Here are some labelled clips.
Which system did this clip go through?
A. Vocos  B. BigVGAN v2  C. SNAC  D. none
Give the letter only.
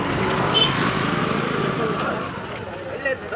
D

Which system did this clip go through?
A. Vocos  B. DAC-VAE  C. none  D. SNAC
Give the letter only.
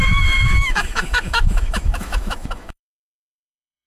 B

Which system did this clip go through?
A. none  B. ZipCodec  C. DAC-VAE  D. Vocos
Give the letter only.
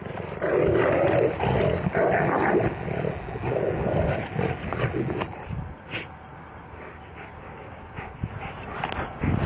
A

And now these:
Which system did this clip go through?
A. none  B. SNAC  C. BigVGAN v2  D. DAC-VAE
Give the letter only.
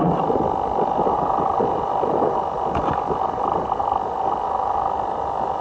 A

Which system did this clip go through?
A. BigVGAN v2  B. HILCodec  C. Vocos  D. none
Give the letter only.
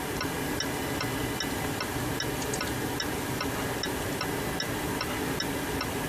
D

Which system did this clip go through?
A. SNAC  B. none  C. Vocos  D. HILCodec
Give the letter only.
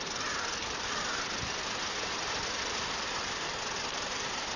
B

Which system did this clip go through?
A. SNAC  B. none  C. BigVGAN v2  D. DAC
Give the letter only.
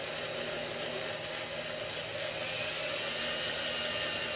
B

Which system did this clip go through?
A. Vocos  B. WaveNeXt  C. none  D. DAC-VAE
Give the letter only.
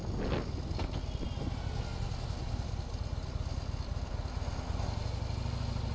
C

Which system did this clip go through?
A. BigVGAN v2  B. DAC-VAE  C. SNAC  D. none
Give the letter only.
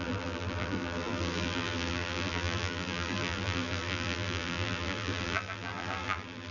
A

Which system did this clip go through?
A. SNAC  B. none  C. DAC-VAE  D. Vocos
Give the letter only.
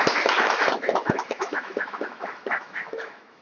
C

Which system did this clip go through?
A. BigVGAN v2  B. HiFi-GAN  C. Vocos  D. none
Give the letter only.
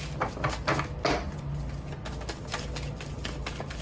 D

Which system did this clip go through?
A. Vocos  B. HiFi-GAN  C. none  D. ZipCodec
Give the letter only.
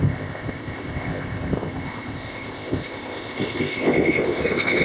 D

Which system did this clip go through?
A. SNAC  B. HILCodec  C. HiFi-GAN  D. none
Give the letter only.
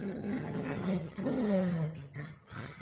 C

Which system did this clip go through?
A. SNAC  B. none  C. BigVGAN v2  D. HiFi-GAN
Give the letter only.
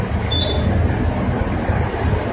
B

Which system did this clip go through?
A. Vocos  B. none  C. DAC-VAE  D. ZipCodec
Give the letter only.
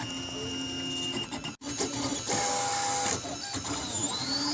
B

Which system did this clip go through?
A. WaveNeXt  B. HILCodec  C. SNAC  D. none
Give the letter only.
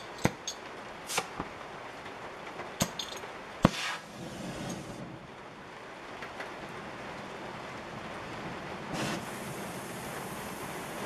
D